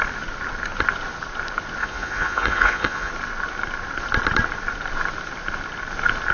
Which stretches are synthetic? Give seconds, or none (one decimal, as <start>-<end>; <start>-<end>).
1.8-3.1